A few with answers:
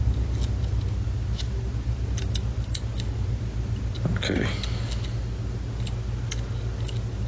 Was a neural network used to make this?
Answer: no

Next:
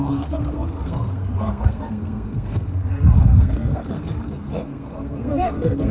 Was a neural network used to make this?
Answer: yes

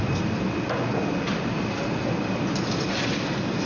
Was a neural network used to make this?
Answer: no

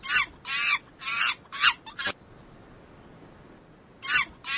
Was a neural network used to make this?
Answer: no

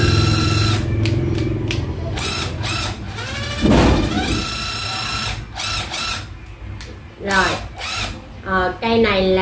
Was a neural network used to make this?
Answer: no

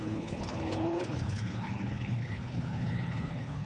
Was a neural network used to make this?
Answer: yes